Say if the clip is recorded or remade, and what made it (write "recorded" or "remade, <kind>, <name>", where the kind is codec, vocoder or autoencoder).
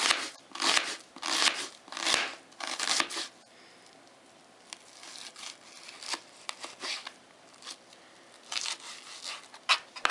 recorded